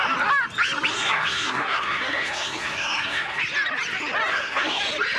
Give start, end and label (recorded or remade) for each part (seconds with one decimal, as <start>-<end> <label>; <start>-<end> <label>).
0.0-0.9 recorded; 0.9-3.4 remade; 3.4-4.3 recorded; 4.3-4.8 remade; 4.8-5.2 recorded